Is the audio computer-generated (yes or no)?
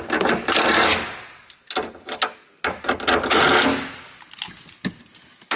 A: no